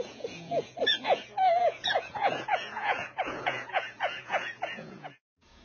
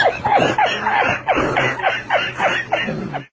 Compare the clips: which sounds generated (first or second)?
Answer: first